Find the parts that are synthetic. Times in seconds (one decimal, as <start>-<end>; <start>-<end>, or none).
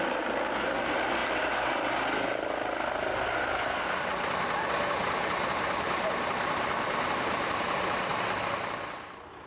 none